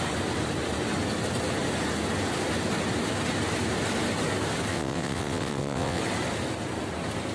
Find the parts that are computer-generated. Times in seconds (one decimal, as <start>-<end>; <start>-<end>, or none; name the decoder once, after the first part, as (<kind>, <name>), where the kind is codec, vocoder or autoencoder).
4.7-6.0 (vocoder, WaveNeXt)